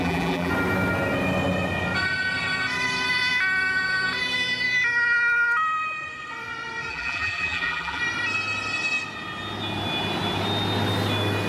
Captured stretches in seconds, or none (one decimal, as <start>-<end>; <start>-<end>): 0.5-6.9; 8.0-11.5